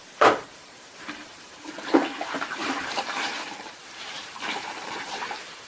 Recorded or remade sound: remade